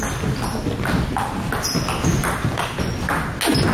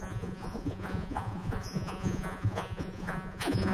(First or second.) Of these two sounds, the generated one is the second